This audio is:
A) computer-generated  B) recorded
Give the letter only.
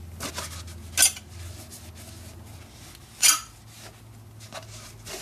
B